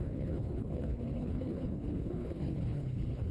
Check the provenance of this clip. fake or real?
fake